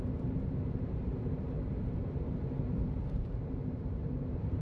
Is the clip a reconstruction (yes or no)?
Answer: yes